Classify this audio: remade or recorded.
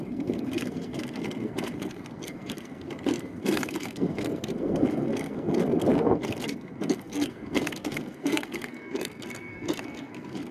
remade